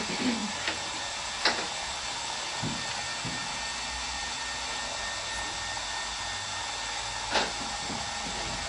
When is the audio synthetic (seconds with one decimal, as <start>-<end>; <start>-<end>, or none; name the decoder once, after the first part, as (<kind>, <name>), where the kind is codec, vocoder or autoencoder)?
none

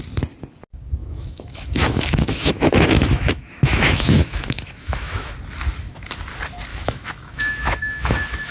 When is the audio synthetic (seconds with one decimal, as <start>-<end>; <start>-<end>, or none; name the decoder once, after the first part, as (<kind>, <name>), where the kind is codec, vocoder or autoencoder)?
1.0-5.3 (autoencoder, DAC-VAE); 6.7-8.5

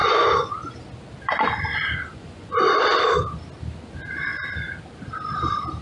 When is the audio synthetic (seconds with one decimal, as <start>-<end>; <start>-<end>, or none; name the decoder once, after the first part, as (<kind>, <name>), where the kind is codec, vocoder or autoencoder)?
0.0-0.5 (vocoder, Vocos); 2.1-2.8

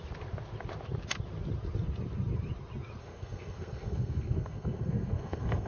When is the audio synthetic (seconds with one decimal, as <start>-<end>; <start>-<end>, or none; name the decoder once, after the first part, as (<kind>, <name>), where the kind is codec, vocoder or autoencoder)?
3.0-5.7 (codec, SNAC)

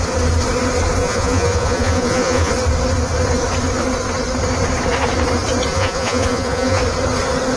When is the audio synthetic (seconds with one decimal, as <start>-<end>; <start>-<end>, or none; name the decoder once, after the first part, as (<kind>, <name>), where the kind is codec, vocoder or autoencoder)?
1.0-2.5 (vocoder, Vocos); 5.7-6.8